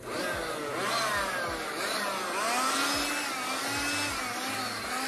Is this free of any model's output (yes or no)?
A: yes